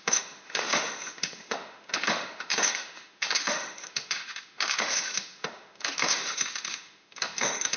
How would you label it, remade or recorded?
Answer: remade